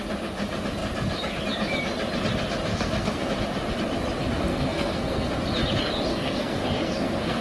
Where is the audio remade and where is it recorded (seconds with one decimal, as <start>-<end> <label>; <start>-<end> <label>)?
0.0-2.7 recorded; 2.7-3.3 remade; 3.3-4.5 recorded; 4.5-5.3 remade; 5.3-6.1 recorded; 6.1-7.4 remade